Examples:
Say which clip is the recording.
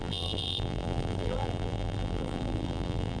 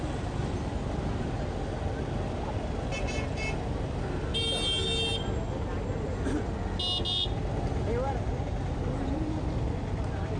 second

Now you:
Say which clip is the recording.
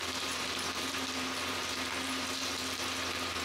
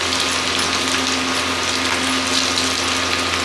second